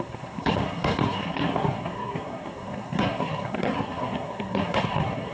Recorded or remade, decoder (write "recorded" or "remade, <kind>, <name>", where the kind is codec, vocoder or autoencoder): remade, codec, SNAC